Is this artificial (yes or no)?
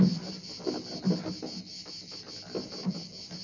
no